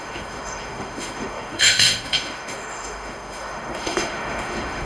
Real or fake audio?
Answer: fake